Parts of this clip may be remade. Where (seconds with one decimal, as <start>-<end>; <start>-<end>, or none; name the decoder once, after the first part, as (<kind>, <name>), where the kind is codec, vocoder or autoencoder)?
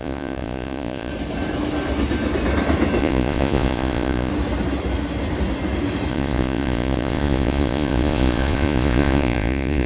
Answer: 0.0-1.1 (vocoder, Vocos); 3.0-4.3; 6.1-9.9